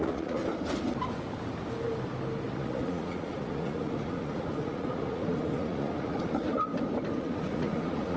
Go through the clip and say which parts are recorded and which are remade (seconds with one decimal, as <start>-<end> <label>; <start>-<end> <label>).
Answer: 0.0-0.4 remade; 0.4-2.5 recorded; 2.5-6.7 remade; 6.7-7.2 recorded; 7.2-8.2 remade